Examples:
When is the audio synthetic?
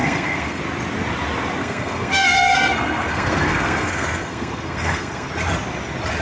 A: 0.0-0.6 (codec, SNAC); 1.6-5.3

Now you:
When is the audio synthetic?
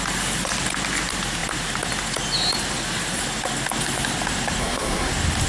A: 4.6-5.1 (codec, SNAC)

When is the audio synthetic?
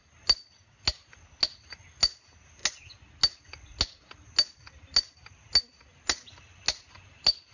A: none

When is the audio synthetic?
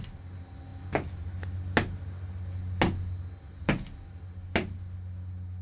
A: none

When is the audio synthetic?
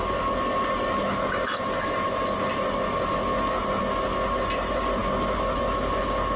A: none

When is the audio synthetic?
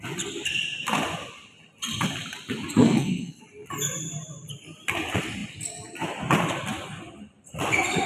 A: 2.8-3.4 (codec, SNAC)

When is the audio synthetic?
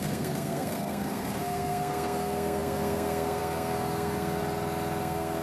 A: 0.0-4.4 (codec, SNAC); 5.0-5.4